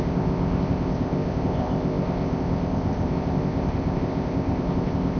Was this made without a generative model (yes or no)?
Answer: no